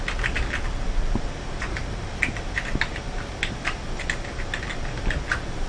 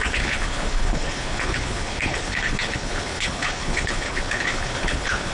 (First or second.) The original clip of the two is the first